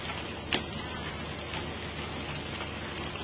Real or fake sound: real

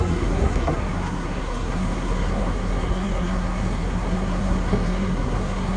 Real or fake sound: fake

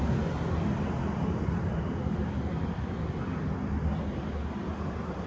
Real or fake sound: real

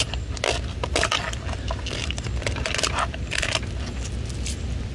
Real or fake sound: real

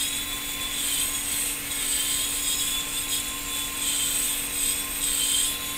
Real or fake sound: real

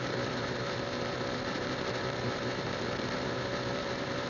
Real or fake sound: fake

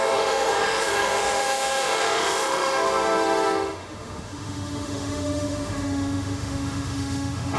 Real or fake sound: fake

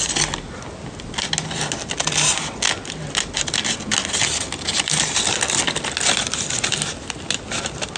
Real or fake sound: real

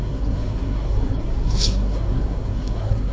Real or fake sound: fake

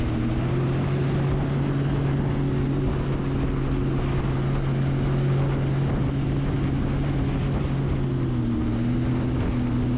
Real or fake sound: real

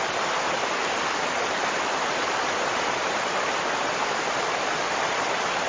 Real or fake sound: real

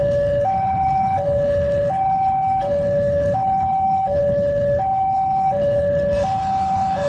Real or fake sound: fake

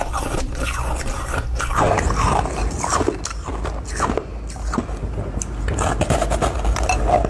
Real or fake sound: real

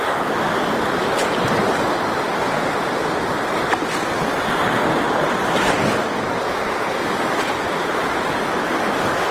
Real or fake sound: real